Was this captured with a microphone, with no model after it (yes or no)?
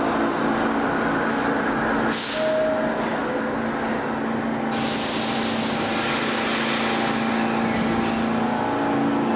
yes